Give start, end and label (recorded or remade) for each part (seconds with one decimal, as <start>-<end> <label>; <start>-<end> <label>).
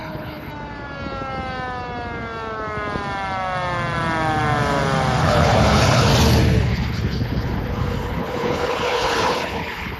0.0-0.5 remade; 0.5-5.2 recorded; 5.2-6.1 remade; 6.1-6.6 recorded; 6.6-10.0 remade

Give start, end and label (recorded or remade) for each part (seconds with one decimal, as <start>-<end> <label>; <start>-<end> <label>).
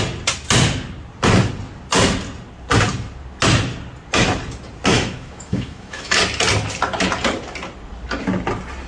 0.0-4.9 recorded; 4.9-6.2 remade; 6.2-8.9 recorded